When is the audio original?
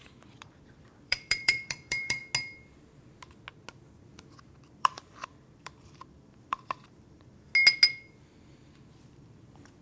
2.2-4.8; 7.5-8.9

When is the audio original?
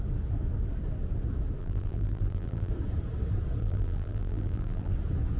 0.0-1.6; 2.7-3.6; 4.9-5.4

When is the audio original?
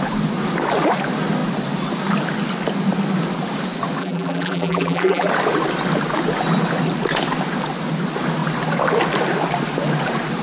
0.0-4.0; 5.3-10.4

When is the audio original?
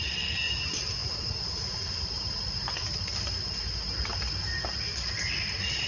0.0-1.0; 1.5-5.9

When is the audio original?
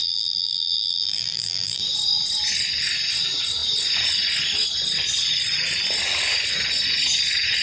1.8-7.6